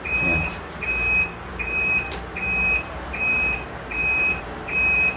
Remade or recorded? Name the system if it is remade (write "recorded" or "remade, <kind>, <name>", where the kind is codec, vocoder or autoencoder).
remade, vocoder, BigVGAN v2